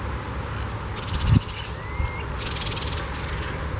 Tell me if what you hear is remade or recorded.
recorded